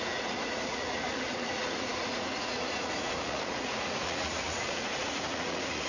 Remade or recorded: remade